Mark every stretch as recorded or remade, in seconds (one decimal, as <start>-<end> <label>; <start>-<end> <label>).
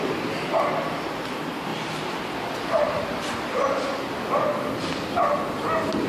0.0-1.7 recorded; 1.7-5.4 remade; 5.4-6.1 recorded